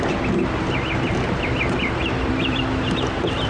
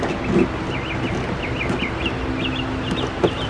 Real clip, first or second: second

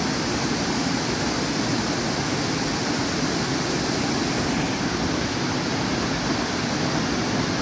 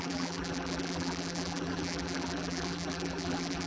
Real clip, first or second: first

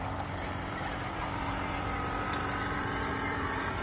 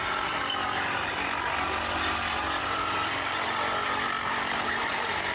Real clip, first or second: second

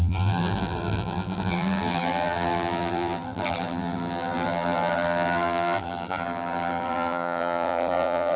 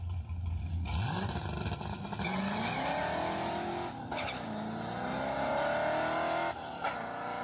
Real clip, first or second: second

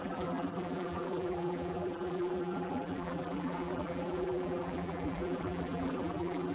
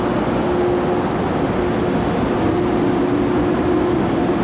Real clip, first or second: second